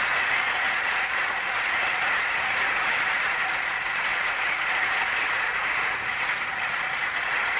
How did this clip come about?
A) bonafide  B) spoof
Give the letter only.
B